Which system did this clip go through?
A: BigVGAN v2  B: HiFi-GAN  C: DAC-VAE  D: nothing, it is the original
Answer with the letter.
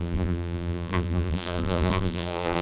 A